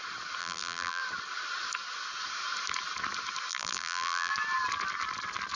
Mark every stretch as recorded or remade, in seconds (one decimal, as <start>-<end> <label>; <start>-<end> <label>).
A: 0.0-0.4 recorded; 0.4-1.0 remade; 1.0-3.5 recorded; 3.5-4.3 remade; 4.3-5.6 recorded